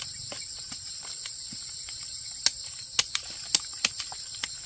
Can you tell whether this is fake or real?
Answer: real